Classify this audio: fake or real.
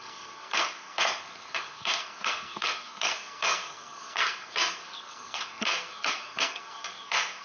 fake